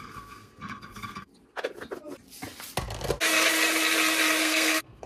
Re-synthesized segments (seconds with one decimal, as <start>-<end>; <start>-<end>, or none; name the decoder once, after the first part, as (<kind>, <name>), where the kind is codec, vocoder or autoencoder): 0.0-1.3 (codec, SNAC); 4.4-5.1